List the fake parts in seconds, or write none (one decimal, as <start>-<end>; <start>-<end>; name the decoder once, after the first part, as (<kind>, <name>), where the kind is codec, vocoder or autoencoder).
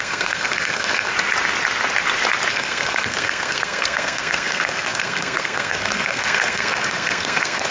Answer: 0.0-1.1 (codec, SNAC); 2.5-7.7